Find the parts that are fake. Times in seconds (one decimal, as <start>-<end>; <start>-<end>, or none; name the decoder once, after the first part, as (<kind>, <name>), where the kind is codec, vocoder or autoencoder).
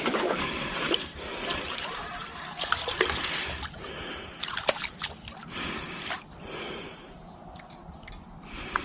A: 0.0-1.4 (vocoder, BigVGAN v2); 4.8-5.4; 6.8-8.8